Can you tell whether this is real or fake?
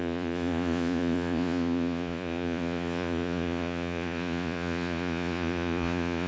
fake